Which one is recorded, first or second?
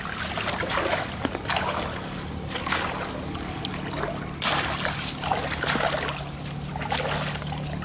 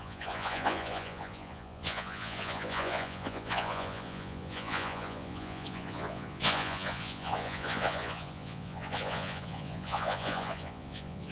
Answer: first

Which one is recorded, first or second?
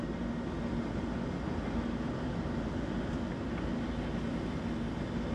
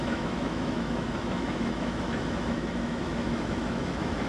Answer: first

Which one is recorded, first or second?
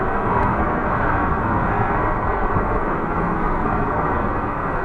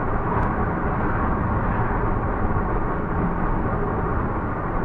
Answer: second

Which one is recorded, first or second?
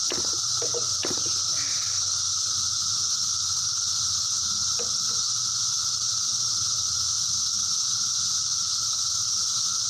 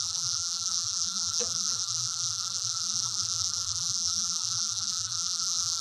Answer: first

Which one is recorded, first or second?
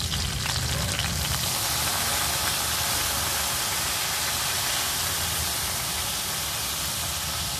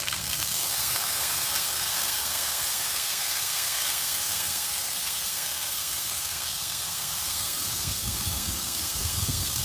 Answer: first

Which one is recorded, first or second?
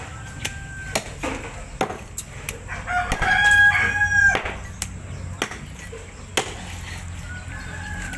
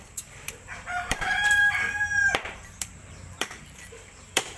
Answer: first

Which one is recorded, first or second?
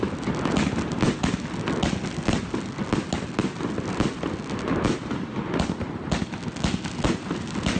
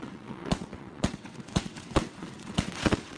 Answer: first